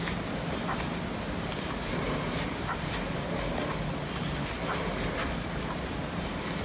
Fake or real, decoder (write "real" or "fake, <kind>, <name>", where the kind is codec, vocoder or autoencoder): real